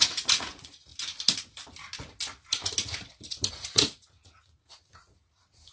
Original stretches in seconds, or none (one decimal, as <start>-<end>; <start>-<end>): 0.9-3.5